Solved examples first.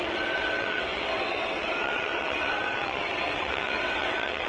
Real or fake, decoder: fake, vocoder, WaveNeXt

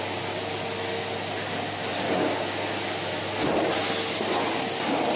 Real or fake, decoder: real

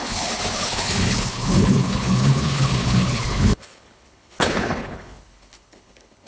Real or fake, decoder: fake, codec, HILCodec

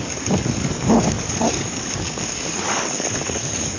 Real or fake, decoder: fake, codec, DAC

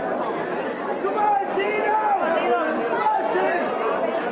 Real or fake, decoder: real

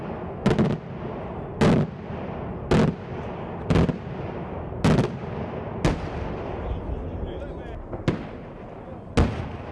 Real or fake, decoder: real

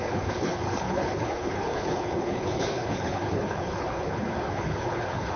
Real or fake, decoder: fake, codec, HILCodec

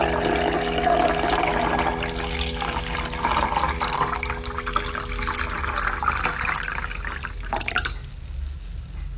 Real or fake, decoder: real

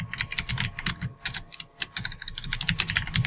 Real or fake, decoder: real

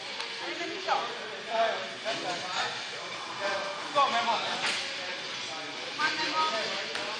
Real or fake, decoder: real